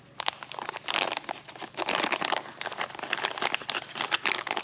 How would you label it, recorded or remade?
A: recorded